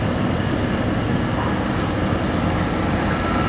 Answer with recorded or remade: recorded